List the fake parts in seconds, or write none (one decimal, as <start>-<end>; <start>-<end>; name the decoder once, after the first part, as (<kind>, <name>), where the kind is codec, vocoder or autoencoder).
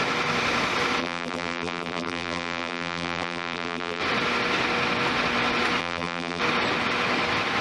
1.0-4.0 (vocoder, BigVGAN v2); 5.8-6.4